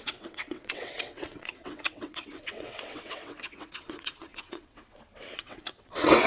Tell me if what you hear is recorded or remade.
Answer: remade